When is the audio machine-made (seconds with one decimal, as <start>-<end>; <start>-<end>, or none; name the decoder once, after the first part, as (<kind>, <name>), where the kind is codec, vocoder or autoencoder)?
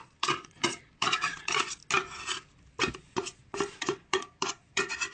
0.0-1.8 (vocoder, Vocos); 2.9-5.1